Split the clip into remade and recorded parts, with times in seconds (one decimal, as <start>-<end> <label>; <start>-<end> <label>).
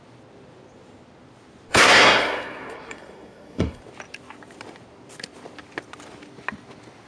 0.0-1.7 recorded; 1.7-3.8 remade; 3.8-7.1 recorded